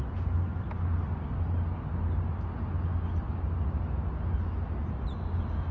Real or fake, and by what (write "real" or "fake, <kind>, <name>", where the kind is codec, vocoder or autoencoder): real